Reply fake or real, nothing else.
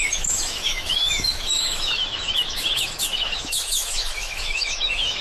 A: fake